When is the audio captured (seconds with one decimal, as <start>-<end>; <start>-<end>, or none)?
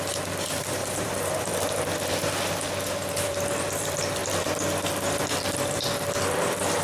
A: 4.2-5.7